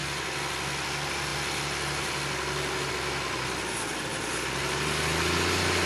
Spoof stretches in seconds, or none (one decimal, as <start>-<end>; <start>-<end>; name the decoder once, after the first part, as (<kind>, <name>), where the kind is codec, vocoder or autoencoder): none